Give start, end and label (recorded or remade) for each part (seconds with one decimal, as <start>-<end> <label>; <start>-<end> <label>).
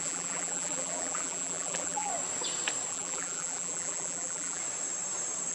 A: 0.0-2.1 remade; 2.1-2.9 recorded; 2.9-4.6 remade; 4.6-5.5 recorded